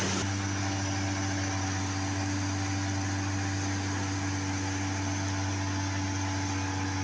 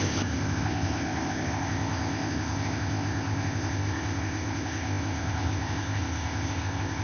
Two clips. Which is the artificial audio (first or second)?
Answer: second